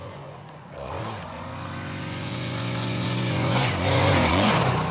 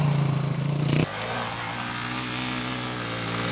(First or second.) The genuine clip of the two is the second